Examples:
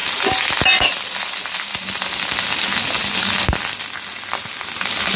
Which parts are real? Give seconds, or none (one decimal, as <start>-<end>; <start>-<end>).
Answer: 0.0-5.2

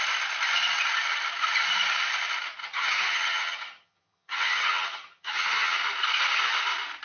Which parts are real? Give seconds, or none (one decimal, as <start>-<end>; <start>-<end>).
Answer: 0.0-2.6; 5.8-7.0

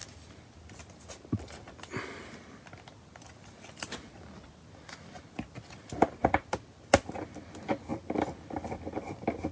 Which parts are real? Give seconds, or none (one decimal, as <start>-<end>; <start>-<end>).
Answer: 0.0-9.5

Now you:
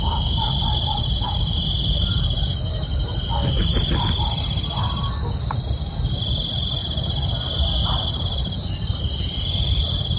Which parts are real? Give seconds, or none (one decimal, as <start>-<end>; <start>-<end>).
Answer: 0.0-10.2